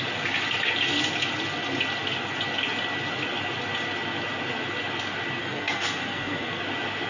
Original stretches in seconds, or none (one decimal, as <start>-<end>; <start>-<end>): 0.0-5.4; 6.6-7.1